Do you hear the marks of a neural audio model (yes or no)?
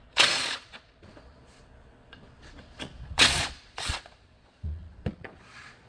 yes